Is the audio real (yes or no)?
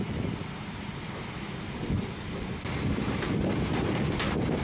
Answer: yes